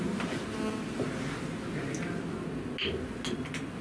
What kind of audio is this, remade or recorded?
recorded